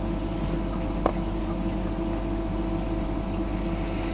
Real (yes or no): yes